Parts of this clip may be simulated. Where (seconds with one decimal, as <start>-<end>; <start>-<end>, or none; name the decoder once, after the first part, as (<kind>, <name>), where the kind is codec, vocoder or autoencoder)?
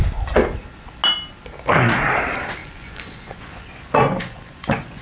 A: 2.6-5.0 (vocoder, Vocos)